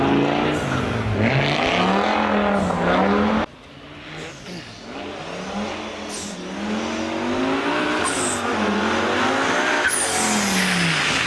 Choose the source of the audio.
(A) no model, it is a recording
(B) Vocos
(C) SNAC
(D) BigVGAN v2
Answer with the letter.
A